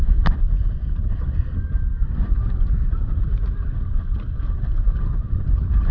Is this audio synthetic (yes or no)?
yes